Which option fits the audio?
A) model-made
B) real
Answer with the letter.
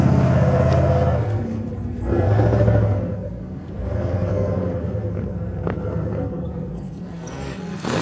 A